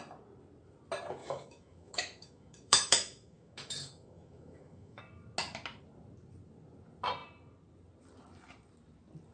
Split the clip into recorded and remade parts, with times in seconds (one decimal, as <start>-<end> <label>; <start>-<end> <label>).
0.0-1.2 recorded; 1.2-5.0 remade; 5.0-9.3 recorded